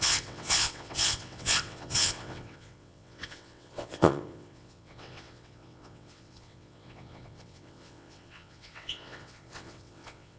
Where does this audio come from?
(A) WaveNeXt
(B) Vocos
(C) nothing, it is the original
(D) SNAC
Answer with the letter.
A